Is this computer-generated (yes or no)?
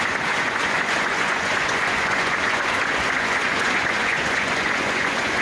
yes